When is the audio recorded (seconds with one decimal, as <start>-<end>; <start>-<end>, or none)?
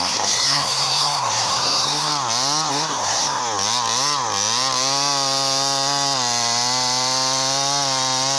2.1-2.7; 3.4-8.4